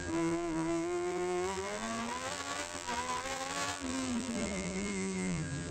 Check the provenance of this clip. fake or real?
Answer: fake